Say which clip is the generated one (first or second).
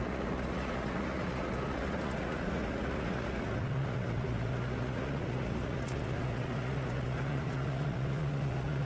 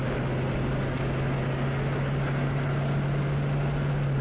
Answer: first